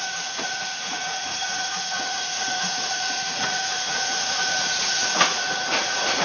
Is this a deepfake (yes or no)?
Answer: yes